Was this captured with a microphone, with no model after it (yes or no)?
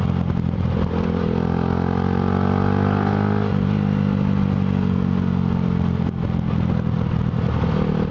yes